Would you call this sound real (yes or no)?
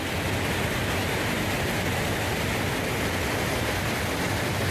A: yes